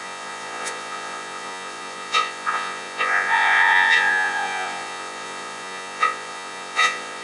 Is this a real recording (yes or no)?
no